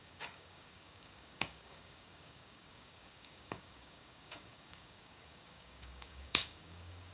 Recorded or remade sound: remade